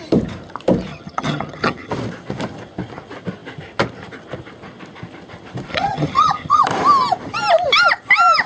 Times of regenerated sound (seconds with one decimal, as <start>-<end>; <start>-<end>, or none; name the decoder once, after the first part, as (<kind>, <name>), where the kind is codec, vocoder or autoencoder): 0.9-1.9 (vocoder, HiFi-GAN); 5.7-6.6